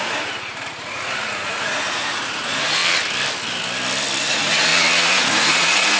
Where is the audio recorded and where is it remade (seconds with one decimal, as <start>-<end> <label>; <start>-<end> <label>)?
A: 0.0-2.8 remade; 2.8-4.2 recorded; 4.2-4.7 remade; 4.7-5.3 recorded; 5.3-6.0 remade